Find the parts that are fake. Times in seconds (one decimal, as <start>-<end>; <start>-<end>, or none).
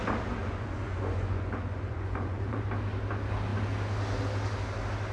0.4-2.6